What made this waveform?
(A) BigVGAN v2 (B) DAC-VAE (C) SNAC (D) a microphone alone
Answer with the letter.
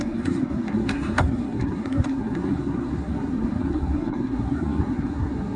C